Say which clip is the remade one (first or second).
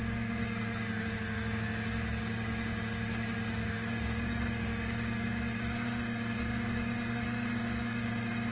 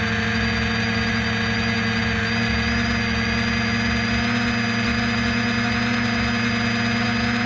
first